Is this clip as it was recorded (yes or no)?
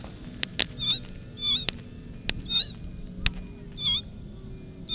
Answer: yes